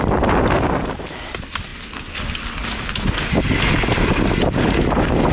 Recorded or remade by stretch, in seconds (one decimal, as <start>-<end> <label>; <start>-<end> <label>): 0.0-5.3 recorded